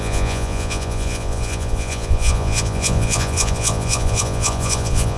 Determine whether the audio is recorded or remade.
remade